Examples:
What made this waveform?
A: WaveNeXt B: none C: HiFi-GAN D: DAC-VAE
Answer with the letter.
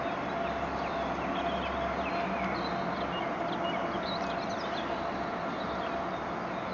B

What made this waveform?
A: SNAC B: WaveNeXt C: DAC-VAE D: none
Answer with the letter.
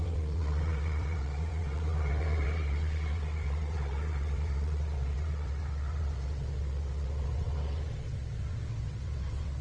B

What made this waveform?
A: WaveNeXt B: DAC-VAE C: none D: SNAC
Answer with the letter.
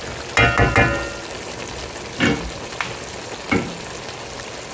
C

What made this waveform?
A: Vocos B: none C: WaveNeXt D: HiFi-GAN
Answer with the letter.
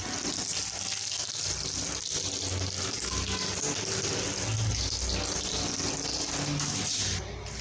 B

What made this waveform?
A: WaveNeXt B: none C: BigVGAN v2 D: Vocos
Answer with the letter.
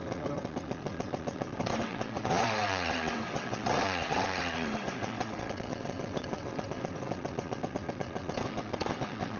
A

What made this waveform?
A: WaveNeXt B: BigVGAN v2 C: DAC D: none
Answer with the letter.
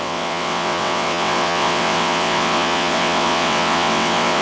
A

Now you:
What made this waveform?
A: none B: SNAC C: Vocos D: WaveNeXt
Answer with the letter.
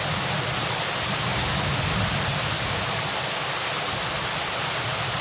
A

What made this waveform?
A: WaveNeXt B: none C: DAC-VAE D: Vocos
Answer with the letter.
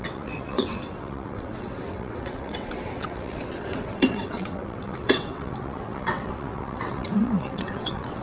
A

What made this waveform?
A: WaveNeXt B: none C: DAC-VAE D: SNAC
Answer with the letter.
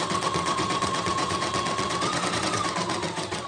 A